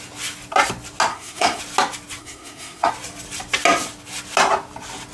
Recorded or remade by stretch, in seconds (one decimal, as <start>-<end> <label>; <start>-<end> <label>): 0.0-1.1 recorded; 1.1-1.6 remade; 1.6-2.2 recorded; 2.2-2.9 remade; 2.9-5.1 recorded